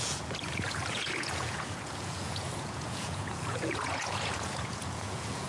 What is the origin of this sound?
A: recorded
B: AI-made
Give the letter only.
B